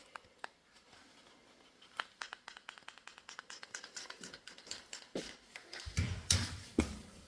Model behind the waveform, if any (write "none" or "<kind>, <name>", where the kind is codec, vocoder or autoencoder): none